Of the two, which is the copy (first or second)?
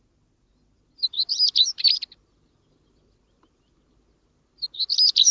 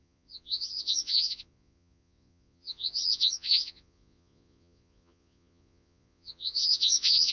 second